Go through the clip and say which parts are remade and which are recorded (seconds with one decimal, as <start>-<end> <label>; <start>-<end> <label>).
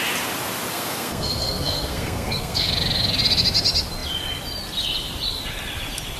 0.0-0.7 recorded; 0.7-2.7 remade; 2.7-6.2 recorded